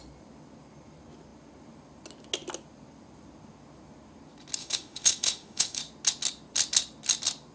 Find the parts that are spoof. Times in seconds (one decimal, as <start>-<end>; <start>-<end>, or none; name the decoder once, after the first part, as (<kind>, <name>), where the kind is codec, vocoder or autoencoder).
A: 4.6-5.8 (autoencoder, DAC-VAE)